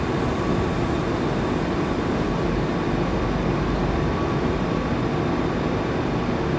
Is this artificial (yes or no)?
no